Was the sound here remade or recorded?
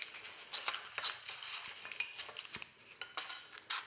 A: recorded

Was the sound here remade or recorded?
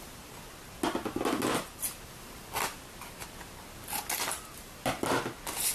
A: recorded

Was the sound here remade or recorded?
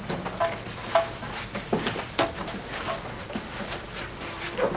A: recorded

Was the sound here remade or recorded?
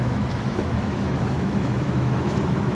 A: remade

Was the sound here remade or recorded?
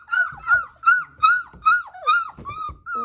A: recorded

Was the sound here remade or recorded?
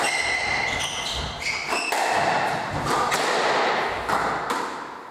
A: recorded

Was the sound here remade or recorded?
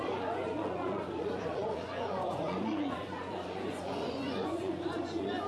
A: remade